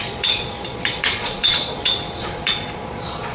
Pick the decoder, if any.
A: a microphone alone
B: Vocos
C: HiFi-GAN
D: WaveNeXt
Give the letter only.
B